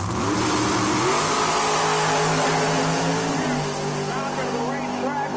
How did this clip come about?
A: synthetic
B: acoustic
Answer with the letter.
B